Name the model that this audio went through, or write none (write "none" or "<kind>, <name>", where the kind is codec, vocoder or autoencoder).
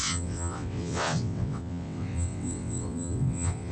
vocoder, WaveNeXt